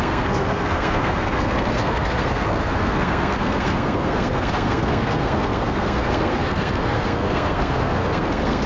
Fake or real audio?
fake